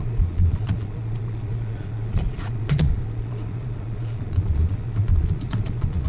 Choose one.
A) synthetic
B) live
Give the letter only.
A